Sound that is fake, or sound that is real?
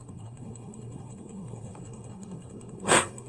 fake